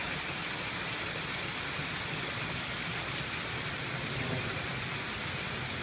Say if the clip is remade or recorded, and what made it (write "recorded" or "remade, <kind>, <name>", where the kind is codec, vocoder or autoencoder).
recorded